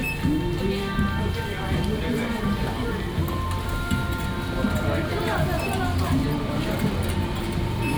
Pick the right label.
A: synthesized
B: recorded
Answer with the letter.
B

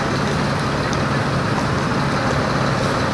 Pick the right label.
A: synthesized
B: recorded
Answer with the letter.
B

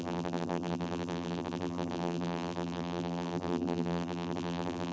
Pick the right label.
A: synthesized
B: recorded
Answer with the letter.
A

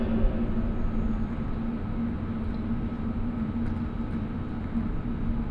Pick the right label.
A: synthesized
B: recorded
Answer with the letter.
B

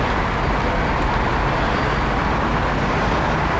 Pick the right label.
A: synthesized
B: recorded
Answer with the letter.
B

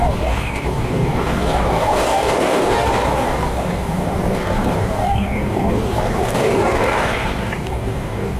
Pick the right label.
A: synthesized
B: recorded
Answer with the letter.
A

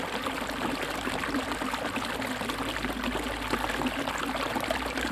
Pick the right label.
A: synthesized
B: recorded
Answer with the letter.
B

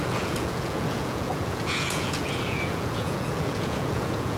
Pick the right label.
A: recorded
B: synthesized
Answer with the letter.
B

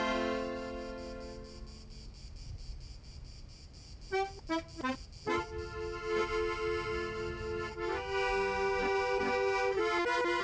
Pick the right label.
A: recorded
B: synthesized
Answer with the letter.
A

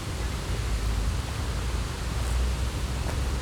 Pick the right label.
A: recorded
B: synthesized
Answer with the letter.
A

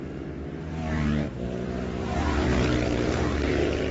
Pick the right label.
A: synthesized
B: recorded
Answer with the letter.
A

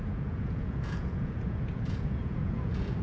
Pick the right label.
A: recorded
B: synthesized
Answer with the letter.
B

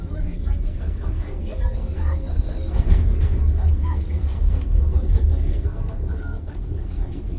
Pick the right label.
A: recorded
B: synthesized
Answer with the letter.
B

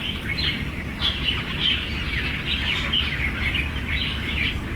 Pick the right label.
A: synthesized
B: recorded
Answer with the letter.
B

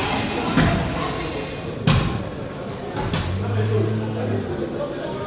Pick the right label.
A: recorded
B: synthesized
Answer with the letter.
A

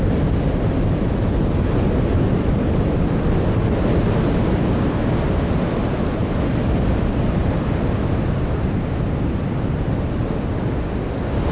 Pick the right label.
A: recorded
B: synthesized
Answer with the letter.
A